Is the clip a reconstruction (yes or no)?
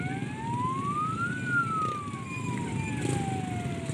no